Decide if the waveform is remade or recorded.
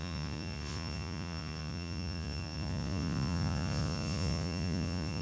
remade